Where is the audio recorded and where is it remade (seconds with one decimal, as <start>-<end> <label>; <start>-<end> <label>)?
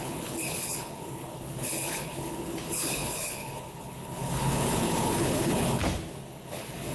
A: 0.0-5.8 remade; 5.8-6.3 recorded; 6.3-6.9 remade